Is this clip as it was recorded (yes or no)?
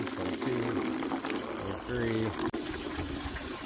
yes